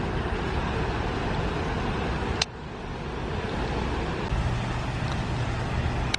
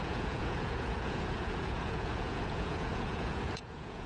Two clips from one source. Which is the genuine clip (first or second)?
first